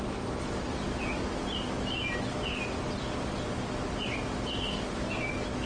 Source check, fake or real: real